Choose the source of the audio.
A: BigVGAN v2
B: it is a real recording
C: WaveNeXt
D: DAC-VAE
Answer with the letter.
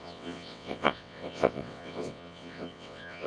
C